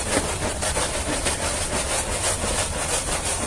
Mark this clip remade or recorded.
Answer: recorded